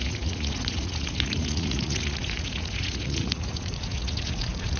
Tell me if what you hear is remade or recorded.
remade